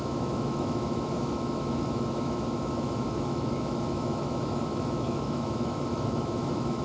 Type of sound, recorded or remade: remade